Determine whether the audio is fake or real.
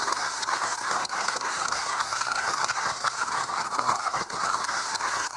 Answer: fake